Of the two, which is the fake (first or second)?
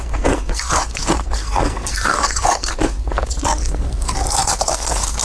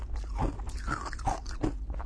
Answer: first